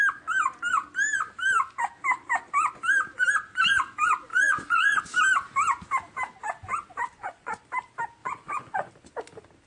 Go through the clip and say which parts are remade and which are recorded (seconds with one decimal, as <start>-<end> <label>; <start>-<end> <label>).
0.0-4.3 recorded; 4.3-5.0 remade; 5.0-7.1 recorded; 7.1-7.6 remade; 7.6-8.2 recorded; 8.2-8.9 remade; 8.9-9.7 recorded